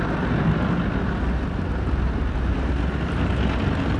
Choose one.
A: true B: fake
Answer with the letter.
A